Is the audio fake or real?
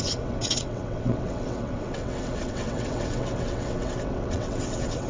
fake